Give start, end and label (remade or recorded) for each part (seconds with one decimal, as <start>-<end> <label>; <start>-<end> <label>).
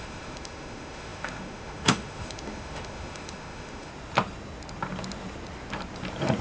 0.0-3.9 remade; 3.9-6.4 recorded